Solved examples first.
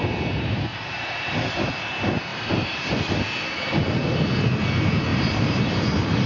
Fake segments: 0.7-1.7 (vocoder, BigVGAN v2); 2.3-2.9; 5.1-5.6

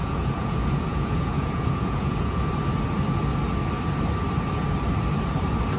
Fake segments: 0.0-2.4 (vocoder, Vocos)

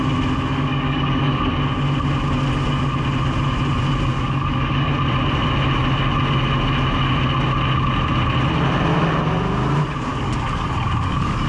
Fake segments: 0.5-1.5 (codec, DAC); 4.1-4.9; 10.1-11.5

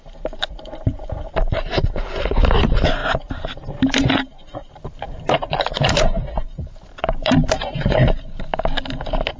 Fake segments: 0.0-8.5 (vocoder, BigVGAN v2)

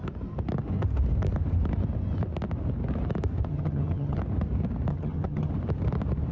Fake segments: 3.5-4.2 (vocoder, HiFi-GAN); 4.9-5.5

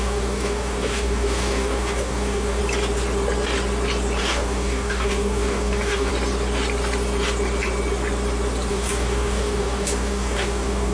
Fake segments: 0.0-2.6 (codec, DAC); 4.2-6.1; 8.7-10.9